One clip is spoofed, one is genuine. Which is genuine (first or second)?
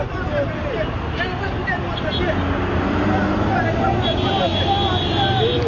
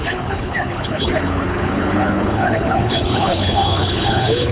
first